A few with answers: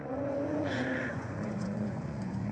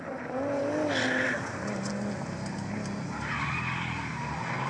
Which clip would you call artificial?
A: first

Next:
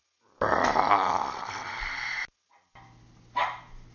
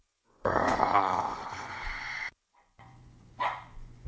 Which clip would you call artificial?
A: second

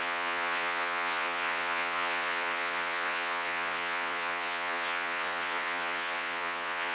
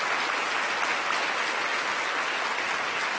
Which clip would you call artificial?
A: first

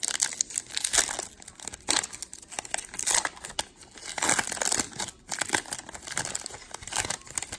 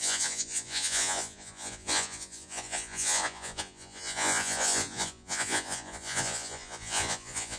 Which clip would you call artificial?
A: second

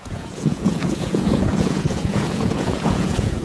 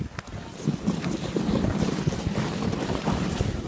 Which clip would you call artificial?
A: first